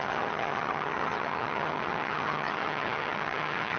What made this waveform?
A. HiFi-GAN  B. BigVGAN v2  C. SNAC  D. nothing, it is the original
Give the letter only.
A